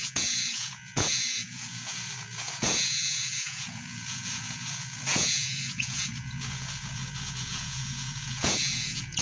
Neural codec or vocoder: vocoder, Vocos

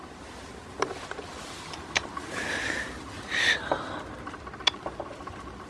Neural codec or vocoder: none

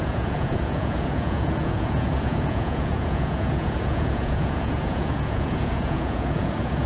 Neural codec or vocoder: vocoder, Vocos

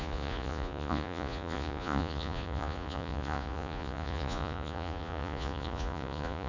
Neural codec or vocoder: vocoder, Vocos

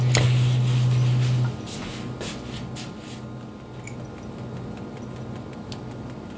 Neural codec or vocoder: none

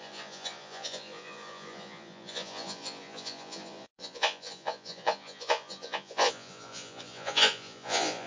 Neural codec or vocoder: vocoder, Vocos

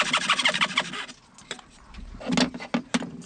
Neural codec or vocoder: none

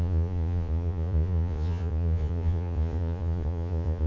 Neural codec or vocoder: vocoder, Vocos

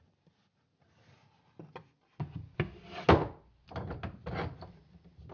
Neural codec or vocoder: none